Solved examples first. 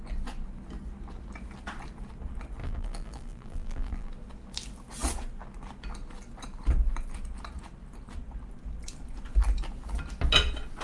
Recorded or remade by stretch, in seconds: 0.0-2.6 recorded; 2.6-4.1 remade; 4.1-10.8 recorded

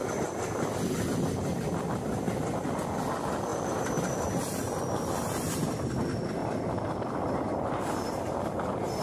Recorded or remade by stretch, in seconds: 0.0-3.5 recorded; 3.5-5.5 remade; 5.5-6.4 recorded; 6.4-9.0 remade

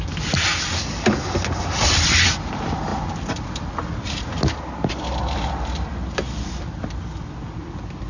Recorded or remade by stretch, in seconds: 0.0-0.5 remade; 0.5-1.6 recorded; 1.6-2.9 remade; 2.9-4.9 recorded; 4.9-8.1 remade

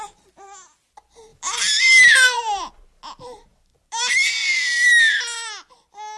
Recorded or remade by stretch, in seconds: 0.0-1.3 recorded; 1.3-2.7 remade; 2.7-3.5 recorded; 3.5-4.9 remade; 4.9-6.2 recorded